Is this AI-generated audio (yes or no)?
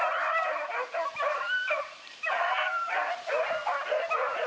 no